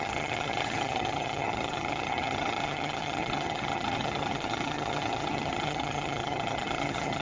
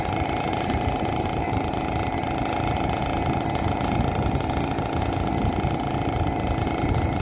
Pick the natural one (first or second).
second